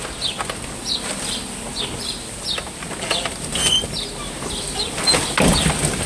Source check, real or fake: real